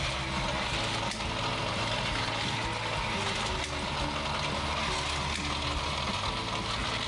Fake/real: real